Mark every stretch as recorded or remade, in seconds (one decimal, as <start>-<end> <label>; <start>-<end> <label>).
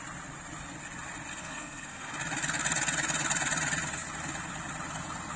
0.0-1.4 recorded; 1.4-2.1 remade; 2.1-5.4 recorded